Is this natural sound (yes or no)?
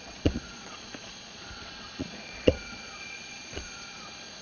no